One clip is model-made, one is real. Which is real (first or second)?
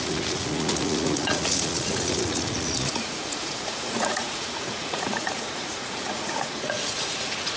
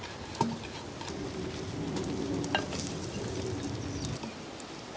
second